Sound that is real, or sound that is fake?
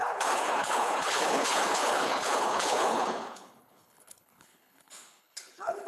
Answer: fake